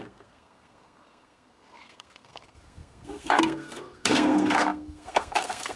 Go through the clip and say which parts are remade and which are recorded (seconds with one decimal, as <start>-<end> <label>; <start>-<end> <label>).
0.0-5.8 remade